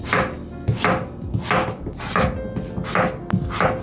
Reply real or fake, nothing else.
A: real